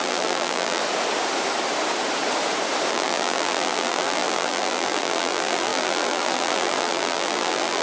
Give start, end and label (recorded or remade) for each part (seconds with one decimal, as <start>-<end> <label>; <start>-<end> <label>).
0.0-0.8 remade; 0.8-2.9 recorded; 2.9-7.8 remade